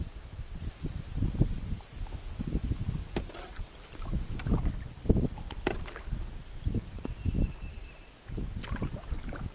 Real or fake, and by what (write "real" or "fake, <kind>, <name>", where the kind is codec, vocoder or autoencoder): real